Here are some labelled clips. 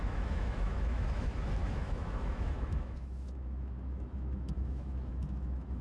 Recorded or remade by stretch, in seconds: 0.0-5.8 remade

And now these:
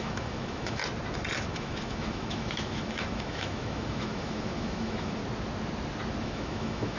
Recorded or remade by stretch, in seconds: 0.0-0.8 remade; 0.8-1.5 recorded; 1.5-5.2 remade; 5.2-6.2 recorded; 6.2-7.0 remade

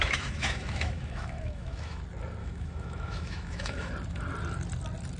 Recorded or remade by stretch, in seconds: 0.0-2.0 remade; 2.0-2.4 recorded; 2.4-3.9 remade; 3.9-5.2 recorded

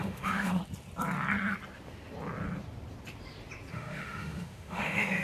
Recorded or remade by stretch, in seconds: 0.0-0.6 remade; 0.6-3.7 recorded; 3.7-5.2 remade

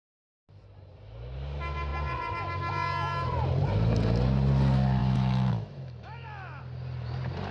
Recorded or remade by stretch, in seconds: 0.0-5.0 recorded; 5.0-6.6 remade; 6.6-7.5 recorded

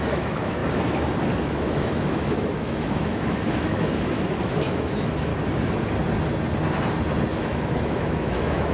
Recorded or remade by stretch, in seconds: 0.0-0.6 remade; 0.6-1.4 recorded; 1.4-5.3 remade; 5.3-7.3 recorded; 7.3-8.7 remade

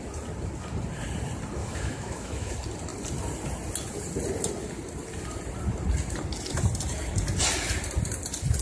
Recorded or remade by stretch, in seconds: 0.0-1.6 recorded; 1.6-2.5 remade; 2.5-8.6 recorded

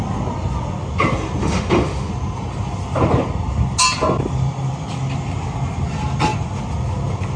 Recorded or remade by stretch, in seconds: 0.0-1.4 recorded; 1.4-2.1 remade; 2.1-7.4 recorded